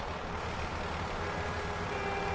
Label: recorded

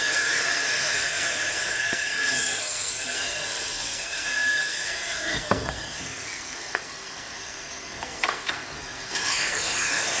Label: remade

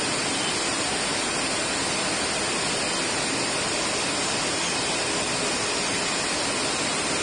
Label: recorded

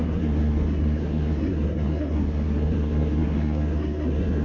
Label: remade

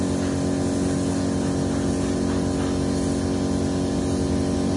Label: recorded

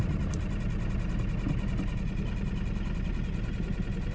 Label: recorded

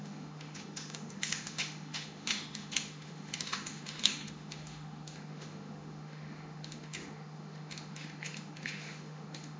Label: remade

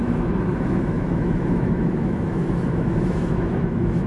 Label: remade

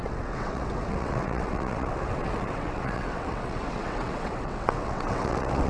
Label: remade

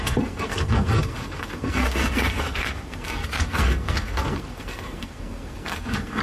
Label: remade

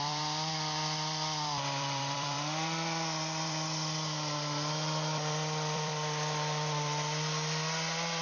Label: remade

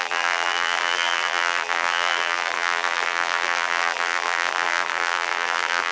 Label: remade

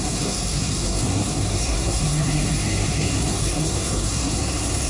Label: remade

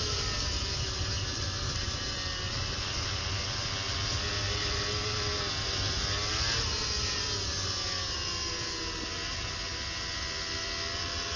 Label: recorded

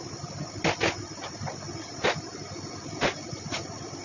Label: recorded